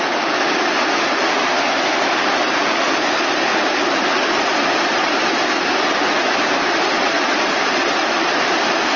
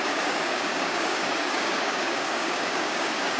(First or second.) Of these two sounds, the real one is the first